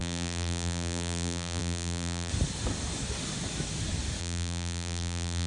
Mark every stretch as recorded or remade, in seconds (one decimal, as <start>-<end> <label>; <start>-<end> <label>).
0.0-2.3 remade; 2.3-4.2 recorded; 4.2-5.5 remade